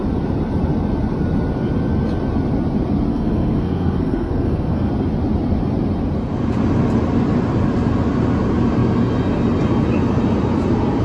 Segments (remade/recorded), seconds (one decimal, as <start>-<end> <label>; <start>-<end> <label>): 0.0-3.1 recorded; 3.1-4.9 remade; 4.9-11.0 recorded